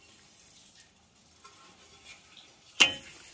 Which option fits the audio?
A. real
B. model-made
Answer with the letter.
A